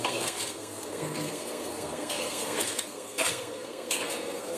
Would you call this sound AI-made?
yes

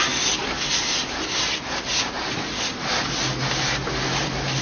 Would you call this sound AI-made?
no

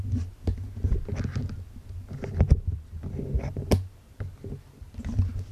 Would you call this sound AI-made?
no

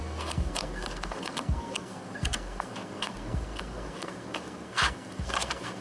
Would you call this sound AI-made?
yes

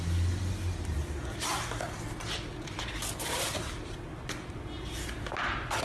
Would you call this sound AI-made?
no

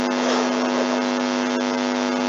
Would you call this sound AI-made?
no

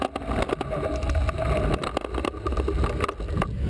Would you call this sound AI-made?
no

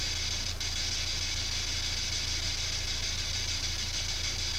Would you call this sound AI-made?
no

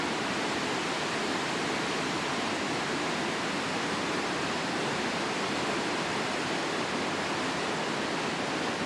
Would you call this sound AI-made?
no